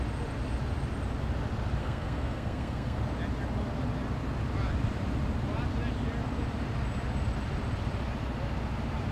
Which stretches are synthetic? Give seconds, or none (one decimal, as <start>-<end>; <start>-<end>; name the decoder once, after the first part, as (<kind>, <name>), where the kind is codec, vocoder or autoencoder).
1.8-3.0 (codec, SNAC)